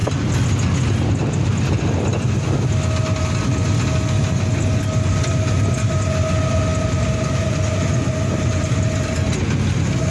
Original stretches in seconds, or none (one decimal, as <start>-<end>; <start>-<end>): 0.0-10.1